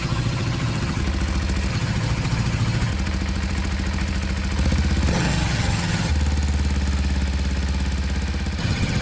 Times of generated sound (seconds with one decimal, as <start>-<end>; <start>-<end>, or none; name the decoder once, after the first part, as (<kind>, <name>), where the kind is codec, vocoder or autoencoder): 0.0-1.0 (vocoder, HiFi-GAN); 1.7-2.9; 5.1-6.1; 8.6-9.0